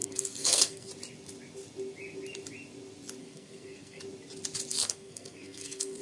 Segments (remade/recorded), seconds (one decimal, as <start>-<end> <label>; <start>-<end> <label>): 0.0-0.9 remade; 0.9-3.2 recorded; 3.2-4.0 remade; 4.0-4.7 recorded; 4.7-6.0 remade

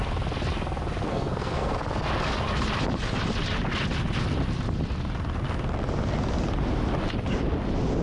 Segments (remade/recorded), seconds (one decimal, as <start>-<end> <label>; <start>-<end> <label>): 0.0-1.1 recorded; 1.1-1.7 remade; 1.7-8.0 recorded